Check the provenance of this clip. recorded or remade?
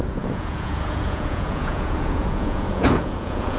remade